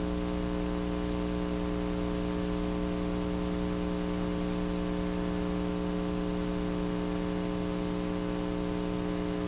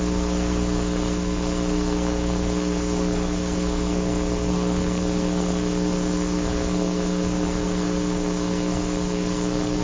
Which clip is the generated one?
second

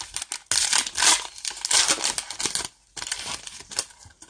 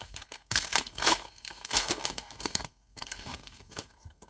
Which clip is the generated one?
second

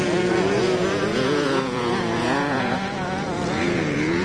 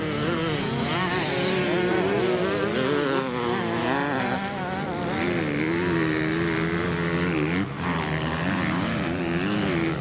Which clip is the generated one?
first